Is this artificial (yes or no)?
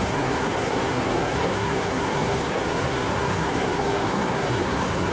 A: yes